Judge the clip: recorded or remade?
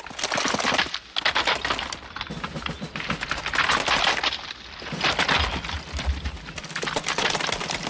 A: recorded